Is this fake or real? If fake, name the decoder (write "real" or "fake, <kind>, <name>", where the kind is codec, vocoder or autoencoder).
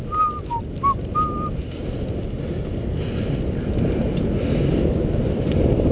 real